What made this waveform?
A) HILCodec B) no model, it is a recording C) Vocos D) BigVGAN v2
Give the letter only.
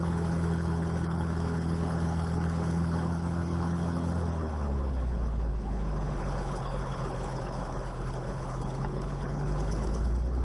A